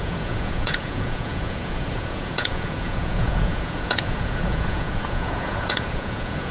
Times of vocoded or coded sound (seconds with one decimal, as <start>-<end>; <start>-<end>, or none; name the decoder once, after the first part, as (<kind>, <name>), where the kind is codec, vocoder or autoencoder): 0.0-6.5 (vocoder, Vocos)